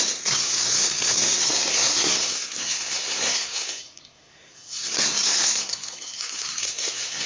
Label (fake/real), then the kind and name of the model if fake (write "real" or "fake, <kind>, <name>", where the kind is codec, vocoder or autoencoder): fake, codec, SNAC